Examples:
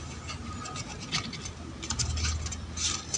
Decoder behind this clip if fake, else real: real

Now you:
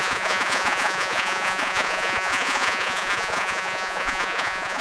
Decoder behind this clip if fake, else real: fake, vocoder, Vocos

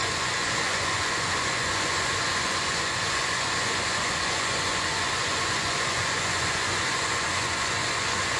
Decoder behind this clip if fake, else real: fake, vocoder, Vocos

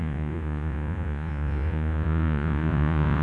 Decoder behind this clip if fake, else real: fake, vocoder, Vocos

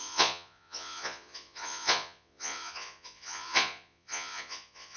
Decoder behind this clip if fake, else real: fake, vocoder, Vocos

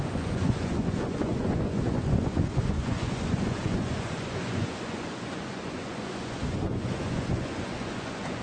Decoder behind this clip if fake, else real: fake, vocoder, Vocos